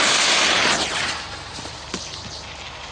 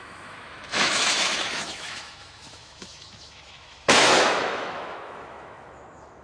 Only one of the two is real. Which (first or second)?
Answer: first